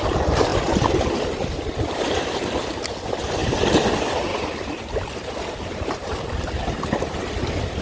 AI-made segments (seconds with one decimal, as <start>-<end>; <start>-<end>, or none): 3.4-3.9; 4.3-7.2